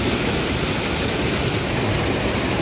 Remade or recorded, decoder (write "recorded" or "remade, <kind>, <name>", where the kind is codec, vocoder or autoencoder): recorded